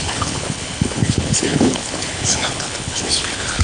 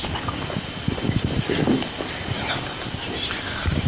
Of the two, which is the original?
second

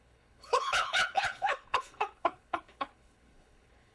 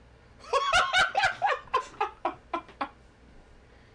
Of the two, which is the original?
second